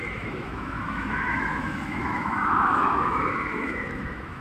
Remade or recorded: remade